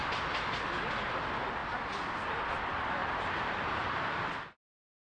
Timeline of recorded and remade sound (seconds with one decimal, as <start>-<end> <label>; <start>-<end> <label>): 0.0-3.0 recorded; 3.0-4.2 remade; 4.2-5.0 recorded